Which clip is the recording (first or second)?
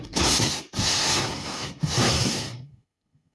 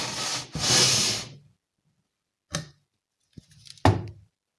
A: second